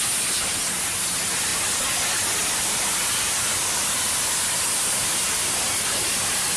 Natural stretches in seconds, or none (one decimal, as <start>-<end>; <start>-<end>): 0.0-6.6